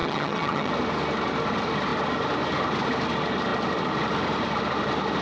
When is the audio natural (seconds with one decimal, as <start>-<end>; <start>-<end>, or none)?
0.7-5.2